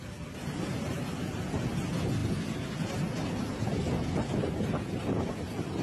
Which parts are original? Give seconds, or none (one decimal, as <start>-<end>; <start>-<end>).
0.0-5.8